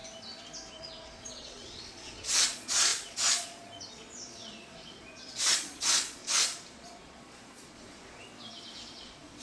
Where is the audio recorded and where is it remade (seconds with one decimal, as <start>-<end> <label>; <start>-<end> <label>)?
0.0-0.7 recorded; 0.7-6.2 remade; 6.2-6.7 recorded; 6.7-8.3 remade; 8.3-8.9 recorded; 8.9-9.4 remade